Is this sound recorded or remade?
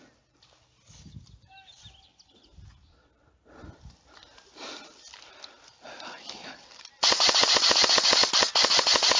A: recorded